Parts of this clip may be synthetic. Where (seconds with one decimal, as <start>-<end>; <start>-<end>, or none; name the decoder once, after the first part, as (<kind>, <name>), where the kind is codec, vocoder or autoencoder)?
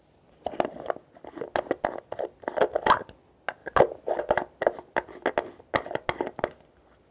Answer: none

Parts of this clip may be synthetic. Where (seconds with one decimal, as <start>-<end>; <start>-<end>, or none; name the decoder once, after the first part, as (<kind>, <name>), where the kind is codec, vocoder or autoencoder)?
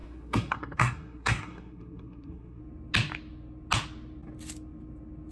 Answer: 0.0-2.6 (codec, SNAC)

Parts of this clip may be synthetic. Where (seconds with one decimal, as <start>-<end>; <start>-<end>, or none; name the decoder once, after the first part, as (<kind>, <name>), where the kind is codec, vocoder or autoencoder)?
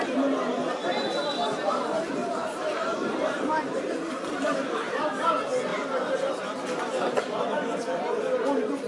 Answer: 2.2-5.0 (vocoder, BigVGAN v2); 5.7-6.3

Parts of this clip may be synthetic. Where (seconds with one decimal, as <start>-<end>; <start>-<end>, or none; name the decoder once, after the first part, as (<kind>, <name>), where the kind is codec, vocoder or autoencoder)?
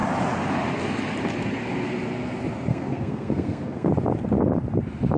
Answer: 2.7-3.9 (codec, SNAC)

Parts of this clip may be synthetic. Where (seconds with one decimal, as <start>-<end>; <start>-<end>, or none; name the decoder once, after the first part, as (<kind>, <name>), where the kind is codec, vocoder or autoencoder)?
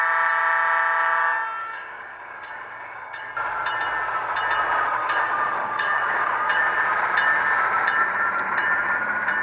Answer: 1.6-3.3 (codec, DAC); 5.0-6.6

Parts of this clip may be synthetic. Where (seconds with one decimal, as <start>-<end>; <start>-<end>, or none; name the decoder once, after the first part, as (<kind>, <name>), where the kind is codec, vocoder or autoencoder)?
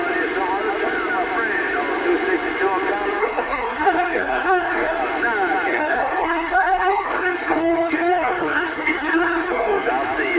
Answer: 3.2-5.0 (codec, SNAC); 5.7-9.9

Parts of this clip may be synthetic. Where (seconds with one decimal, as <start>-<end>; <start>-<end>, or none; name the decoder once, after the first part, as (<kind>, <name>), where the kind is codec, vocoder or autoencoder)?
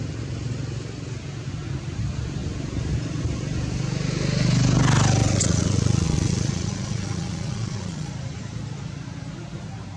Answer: 5.2-8.1 (vocoder, Vocos)